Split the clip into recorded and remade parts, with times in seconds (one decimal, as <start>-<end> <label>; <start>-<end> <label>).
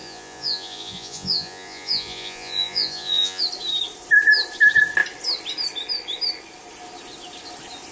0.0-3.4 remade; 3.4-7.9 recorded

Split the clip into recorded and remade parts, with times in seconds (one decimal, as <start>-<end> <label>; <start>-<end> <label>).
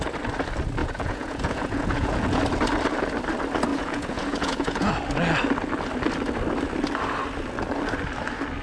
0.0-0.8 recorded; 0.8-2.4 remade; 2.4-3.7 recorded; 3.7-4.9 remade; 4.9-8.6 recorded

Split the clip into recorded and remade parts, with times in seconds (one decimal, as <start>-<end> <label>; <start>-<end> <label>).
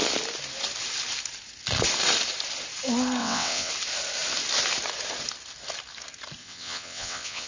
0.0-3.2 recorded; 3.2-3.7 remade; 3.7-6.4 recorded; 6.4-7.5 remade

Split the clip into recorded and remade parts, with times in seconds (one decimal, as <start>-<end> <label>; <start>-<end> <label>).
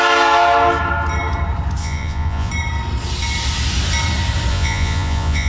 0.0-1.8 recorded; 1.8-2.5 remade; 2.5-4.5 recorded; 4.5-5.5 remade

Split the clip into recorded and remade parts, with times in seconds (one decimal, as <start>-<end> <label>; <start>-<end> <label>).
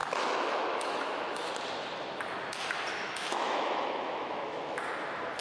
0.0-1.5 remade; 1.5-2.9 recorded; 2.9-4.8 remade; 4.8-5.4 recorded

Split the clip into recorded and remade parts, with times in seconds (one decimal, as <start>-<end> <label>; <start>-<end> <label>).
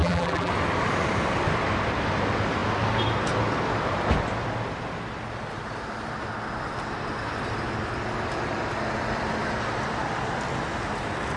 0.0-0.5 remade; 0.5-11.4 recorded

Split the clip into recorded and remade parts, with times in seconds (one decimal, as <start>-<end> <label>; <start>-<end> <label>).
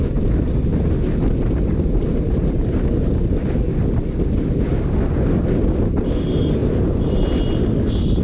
0.0-6.6 recorded; 6.6-7.5 remade; 7.5-8.2 recorded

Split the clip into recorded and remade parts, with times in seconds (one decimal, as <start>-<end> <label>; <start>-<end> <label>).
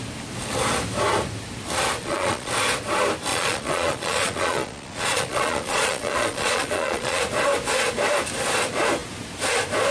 0.0-2.0 recorded; 2.0-2.5 remade; 2.5-3.3 recorded; 3.3-7.2 remade; 7.2-9.9 recorded